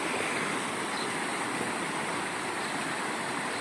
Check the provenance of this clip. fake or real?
fake